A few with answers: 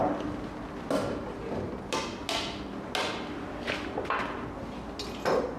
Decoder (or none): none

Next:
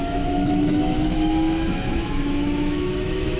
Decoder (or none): autoencoder, DAC-VAE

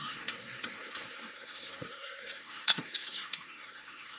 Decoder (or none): codec, SNAC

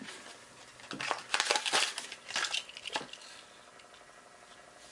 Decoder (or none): none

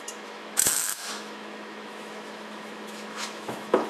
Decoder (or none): autoencoder, DAC-VAE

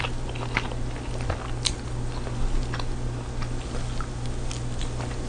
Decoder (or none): none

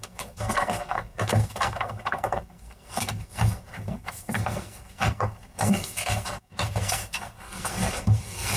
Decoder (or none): codec, SNAC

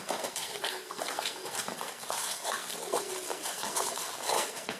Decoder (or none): codec, SNAC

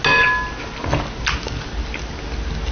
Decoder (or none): none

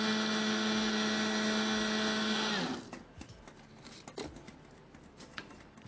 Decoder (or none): none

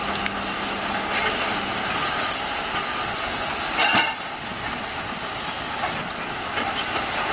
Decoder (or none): none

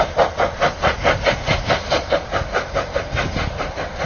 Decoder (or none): none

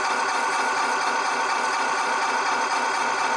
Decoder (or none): vocoder, Vocos